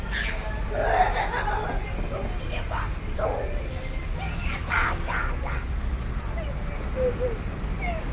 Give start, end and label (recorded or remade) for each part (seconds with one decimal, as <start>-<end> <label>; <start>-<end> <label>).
0.0-1.1 recorded; 1.1-1.6 remade; 1.6-4.0 recorded; 4.0-5.2 remade; 5.2-8.1 recorded